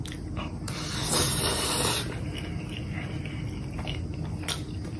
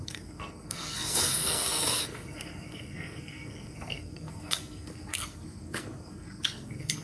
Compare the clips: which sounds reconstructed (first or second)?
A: second